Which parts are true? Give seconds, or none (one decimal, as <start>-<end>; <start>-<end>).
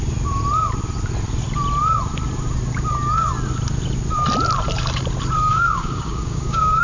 0.0-5.5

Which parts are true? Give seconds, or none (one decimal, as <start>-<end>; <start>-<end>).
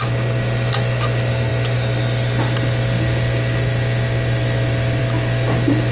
0.0-5.9